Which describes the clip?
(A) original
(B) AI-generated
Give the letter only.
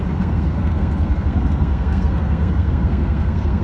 B